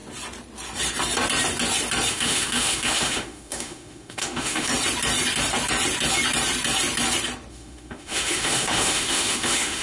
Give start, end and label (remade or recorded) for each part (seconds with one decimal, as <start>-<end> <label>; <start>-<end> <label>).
0.0-2.1 recorded; 2.1-4.7 remade; 4.7-7.5 recorded; 7.5-9.8 remade